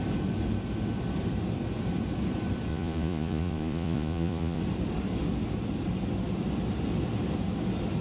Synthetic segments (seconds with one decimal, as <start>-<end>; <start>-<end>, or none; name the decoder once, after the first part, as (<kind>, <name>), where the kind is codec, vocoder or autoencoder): 2.7-4.6 (vocoder, Vocos)